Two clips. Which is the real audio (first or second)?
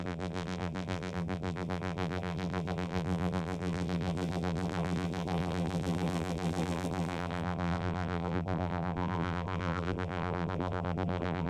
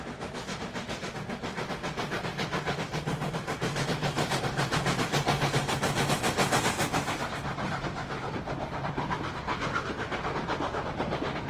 second